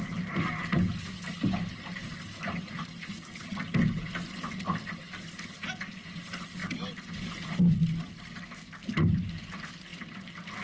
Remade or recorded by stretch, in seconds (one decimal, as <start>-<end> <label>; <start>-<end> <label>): 0.0-10.6 recorded